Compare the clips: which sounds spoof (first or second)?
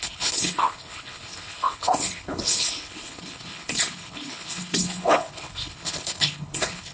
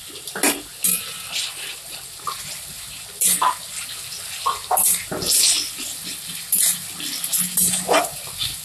first